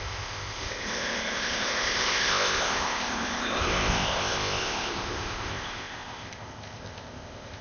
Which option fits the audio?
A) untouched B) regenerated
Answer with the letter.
B